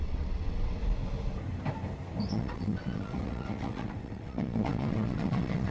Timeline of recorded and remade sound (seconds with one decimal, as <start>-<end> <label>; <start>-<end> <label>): 0.0-0.8 remade; 0.8-2.3 recorded; 2.3-5.7 remade